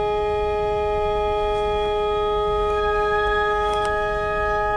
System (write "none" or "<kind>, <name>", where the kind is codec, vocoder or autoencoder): none